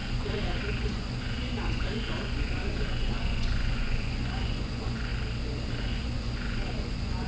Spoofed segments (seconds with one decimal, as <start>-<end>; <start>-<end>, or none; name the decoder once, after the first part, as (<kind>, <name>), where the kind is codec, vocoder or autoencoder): 0.0-5.1 (vocoder, Vocos); 5.8-7.3